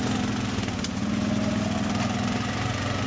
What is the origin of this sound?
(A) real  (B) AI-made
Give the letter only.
A